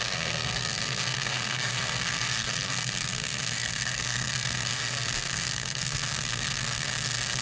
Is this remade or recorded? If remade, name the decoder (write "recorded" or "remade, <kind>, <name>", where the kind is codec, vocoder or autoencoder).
remade, codec, SNAC